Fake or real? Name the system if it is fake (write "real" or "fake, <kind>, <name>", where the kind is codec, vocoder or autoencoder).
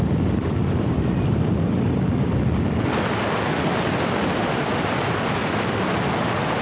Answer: real